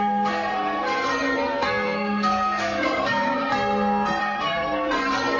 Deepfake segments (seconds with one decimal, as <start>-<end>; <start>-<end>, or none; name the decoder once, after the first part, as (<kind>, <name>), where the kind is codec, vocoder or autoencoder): 0.0-3.5 (codec, SNAC); 4.2-5.4